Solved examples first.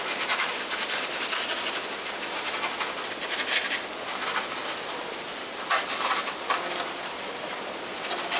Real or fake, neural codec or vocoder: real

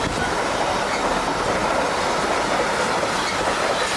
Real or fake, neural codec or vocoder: real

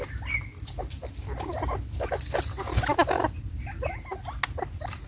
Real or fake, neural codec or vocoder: real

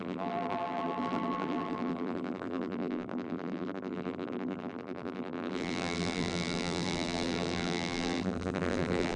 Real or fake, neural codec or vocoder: fake, vocoder, BigVGAN v2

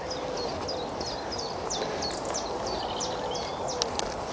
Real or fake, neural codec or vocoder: real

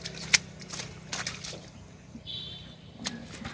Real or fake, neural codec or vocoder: real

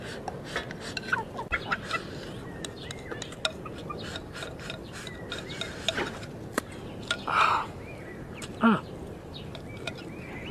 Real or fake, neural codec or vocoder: real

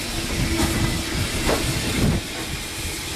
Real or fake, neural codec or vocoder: real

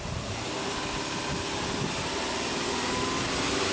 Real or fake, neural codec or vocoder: real